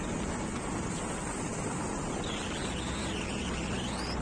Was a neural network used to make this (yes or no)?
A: no